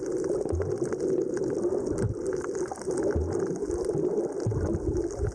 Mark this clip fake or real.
real